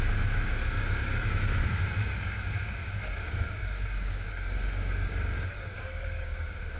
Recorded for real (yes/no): no